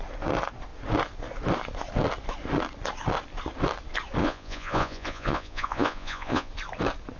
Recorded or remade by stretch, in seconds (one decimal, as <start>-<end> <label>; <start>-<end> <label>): 0.0-4.2 recorded; 4.2-6.5 remade; 6.5-7.2 recorded